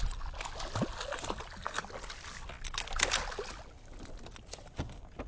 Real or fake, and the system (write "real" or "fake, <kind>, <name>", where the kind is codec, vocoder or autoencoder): real